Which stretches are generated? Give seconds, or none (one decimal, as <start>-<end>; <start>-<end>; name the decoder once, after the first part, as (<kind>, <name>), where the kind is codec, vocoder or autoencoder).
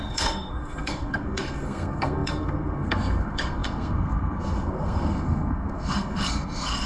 0.0-6.9 (codec, SNAC)